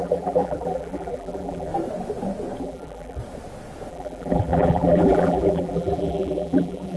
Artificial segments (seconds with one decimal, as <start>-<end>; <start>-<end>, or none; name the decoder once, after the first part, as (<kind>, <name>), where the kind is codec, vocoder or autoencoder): 0.0-1.7 (vocoder, BigVGAN v2); 2.6-3.2; 3.9-7.0